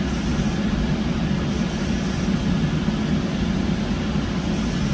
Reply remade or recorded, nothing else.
recorded